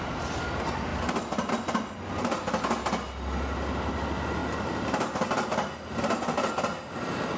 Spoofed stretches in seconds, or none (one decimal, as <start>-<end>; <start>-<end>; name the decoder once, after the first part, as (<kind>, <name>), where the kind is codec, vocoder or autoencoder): none